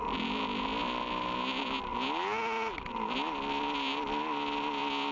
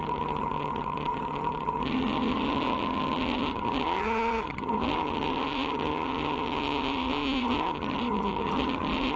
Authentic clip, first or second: first